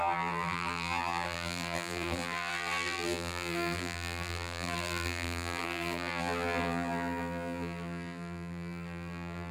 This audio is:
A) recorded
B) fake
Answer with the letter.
B